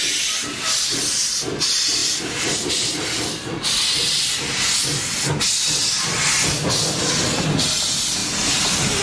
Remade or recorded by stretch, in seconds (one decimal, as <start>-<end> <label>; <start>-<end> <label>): 0.0-8.2 recorded; 8.2-9.0 remade